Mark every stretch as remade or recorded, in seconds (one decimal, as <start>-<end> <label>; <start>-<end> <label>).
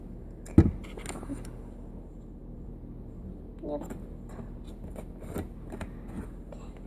0.0-6.9 recorded